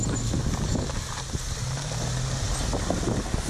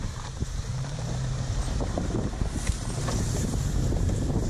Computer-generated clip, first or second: second